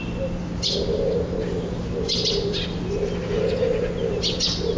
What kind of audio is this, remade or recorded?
recorded